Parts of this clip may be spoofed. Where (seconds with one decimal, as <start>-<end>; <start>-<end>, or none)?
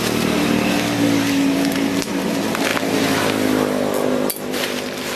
none